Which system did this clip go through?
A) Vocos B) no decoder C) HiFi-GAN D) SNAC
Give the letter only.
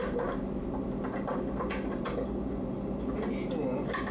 B